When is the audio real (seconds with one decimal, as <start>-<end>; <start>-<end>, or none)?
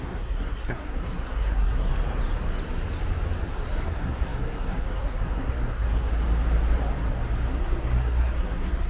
1.9-3.4; 6.1-7.5